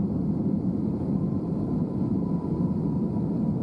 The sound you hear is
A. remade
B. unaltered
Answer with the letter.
A